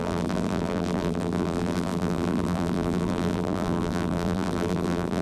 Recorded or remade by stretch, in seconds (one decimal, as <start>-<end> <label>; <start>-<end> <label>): 0.0-5.2 remade